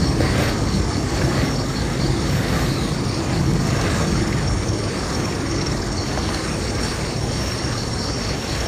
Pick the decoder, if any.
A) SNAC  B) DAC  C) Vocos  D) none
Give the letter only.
B